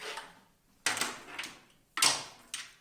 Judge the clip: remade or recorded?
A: recorded